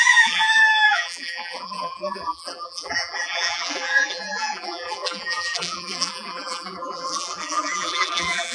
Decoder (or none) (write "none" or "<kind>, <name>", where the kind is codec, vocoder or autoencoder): vocoder, BigVGAN v2